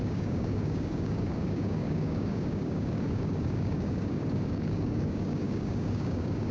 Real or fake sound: fake